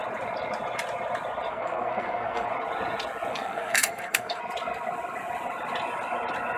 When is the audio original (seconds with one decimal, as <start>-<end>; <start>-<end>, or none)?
0.0-1.5; 2.5-3.3; 4.4-6.6